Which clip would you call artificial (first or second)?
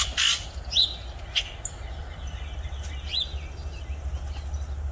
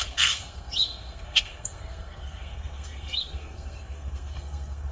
second